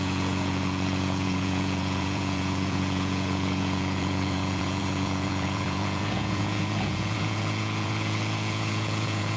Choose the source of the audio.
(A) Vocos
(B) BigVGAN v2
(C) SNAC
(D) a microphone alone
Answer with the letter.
A